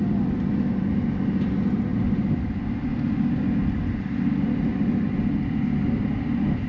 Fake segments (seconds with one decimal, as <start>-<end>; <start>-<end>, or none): none